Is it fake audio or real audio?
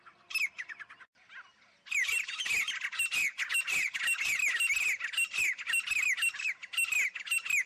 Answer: real